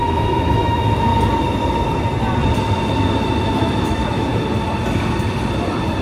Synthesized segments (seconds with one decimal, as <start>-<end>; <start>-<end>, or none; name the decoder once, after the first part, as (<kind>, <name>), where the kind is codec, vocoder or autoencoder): 0.0-1.1 (autoencoder, DAC-VAE); 3.6-4.3